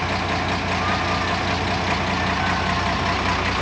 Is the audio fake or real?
real